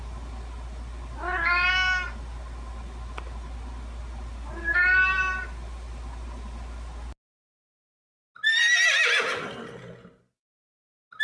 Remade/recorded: recorded